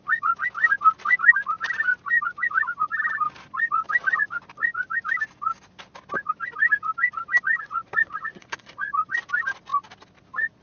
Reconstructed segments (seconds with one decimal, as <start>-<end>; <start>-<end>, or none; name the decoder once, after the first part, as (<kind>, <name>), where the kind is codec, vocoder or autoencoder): 7.5-9.0 (vocoder, Vocos)